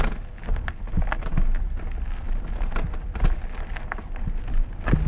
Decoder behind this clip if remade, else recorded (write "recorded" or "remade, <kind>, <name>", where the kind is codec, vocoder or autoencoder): recorded